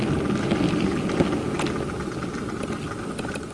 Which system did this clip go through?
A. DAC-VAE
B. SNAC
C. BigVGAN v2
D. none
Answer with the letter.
D